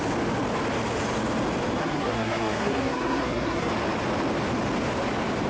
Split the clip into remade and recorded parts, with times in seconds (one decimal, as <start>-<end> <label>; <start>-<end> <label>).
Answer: 0.0-1.8 recorded; 1.8-3.7 remade; 3.7-5.5 recorded